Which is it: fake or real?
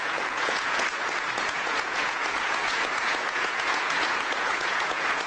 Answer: fake